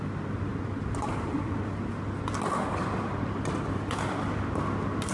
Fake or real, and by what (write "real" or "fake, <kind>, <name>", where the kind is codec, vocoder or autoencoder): real